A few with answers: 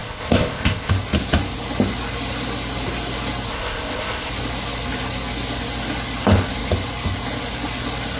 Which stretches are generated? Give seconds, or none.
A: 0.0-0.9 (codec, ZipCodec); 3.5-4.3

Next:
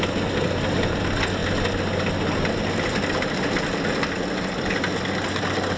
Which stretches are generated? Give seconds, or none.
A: none

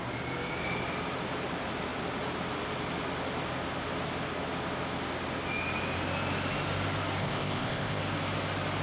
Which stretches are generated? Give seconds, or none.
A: 7.2-8.0 (codec, ZipCodec)

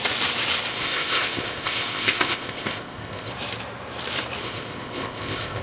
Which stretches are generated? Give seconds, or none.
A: 0.7-3.3 (codec, ZipCodec); 4.4-5.6

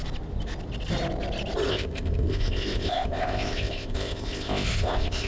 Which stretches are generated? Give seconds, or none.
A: 1.7-5.3 (codec, ZipCodec)

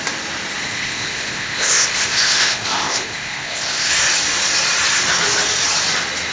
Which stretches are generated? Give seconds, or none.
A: 0.6-3.9 (codec, ZipCodec)

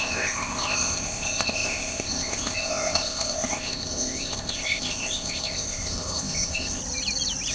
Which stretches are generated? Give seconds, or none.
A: 0.0-6.8 (codec, ZipCodec)

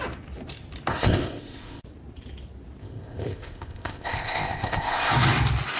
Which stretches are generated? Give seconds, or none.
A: 0.9-1.8 (codec, ZipCodec); 2.8-5.1